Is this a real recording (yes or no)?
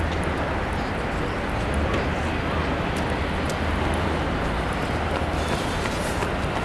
yes